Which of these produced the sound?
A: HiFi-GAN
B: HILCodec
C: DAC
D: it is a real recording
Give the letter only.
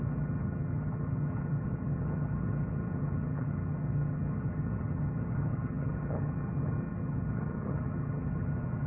A